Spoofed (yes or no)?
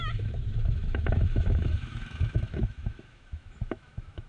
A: yes